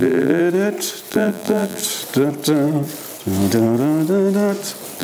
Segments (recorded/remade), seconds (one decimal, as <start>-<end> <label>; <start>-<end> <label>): 0.0-0.4 remade; 0.4-1.1 recorded; 1.1-1.8 remade; 1.8-5.0 recorded